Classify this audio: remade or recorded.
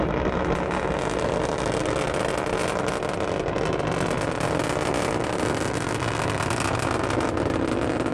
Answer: recorded